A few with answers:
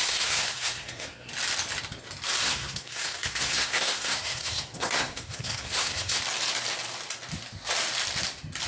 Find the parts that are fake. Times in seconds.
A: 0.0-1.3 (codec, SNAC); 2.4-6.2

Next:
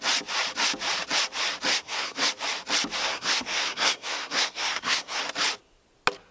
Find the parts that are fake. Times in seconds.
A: 1.7-2.3 (codec, SNAC); 3.0-5.2